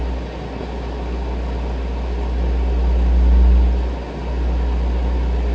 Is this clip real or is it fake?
real